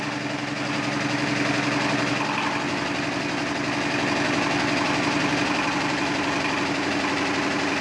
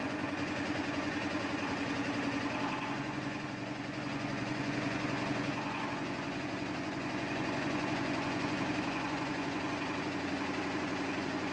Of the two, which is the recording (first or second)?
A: first